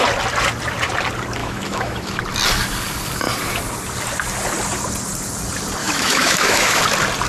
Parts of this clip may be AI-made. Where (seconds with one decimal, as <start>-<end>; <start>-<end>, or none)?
1.4-2.2; 5.8-6.8